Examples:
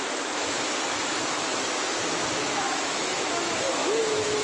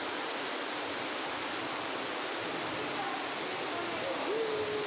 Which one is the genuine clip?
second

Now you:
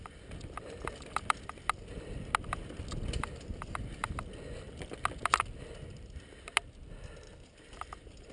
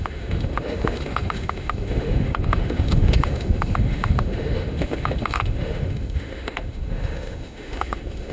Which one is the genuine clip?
first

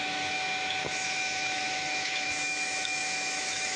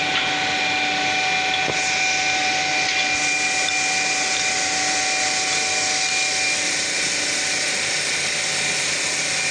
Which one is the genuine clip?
second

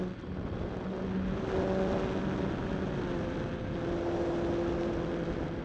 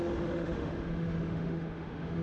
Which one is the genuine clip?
first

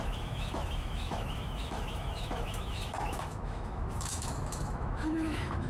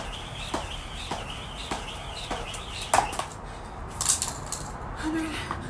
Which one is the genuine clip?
second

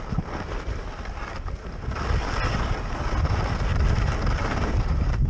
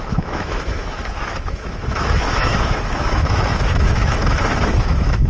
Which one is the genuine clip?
first